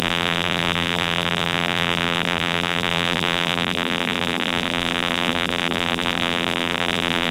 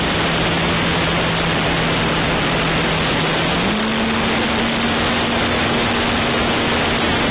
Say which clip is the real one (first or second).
second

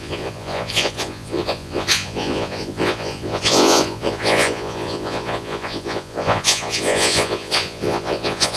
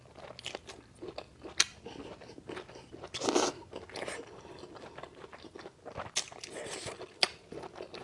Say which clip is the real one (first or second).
second